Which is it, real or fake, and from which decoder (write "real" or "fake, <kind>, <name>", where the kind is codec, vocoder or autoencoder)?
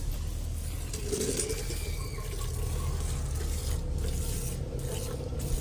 real